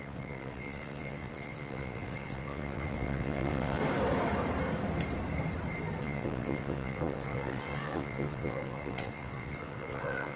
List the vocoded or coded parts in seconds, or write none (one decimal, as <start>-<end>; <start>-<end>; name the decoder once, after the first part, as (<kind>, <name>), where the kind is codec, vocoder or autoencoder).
0.0-3.8 (vocoder, WaveNeXt); 6.0-10.4